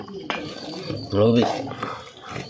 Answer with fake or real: real